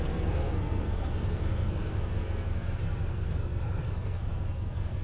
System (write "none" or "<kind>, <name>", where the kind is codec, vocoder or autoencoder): codec, SNAC